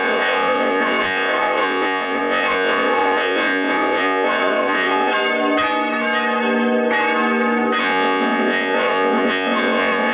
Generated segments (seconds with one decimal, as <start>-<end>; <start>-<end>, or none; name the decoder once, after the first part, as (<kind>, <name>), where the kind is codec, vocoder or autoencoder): 0.0-5.1 (vocoder, Vocos); 7.8-10.1